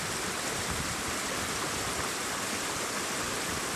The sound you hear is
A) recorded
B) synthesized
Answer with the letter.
A